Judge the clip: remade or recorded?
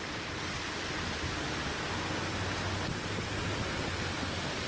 recorded